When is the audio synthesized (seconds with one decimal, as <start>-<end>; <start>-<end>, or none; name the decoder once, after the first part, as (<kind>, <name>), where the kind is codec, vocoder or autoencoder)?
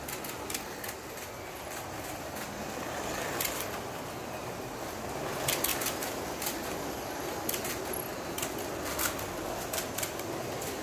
none